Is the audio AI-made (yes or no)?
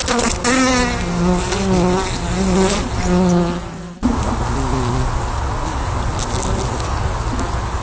no